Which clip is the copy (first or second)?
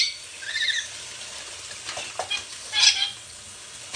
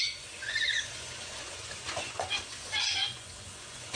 second